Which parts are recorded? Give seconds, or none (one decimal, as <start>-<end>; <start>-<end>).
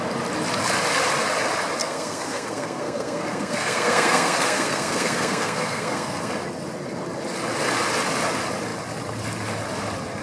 0.0-1.8; 6.3-10.2